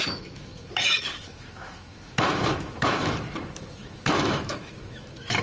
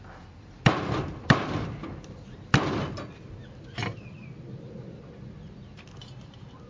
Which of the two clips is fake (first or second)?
first